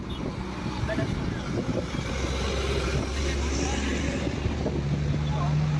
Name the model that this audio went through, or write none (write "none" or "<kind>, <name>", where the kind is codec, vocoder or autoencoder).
none